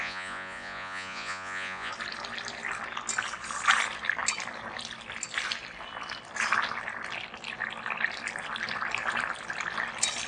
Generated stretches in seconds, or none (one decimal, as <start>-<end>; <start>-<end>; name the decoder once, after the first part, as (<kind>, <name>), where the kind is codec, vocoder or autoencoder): 0.0-1.9 (vocoder, Vocos)